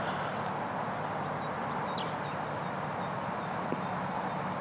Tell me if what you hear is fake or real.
real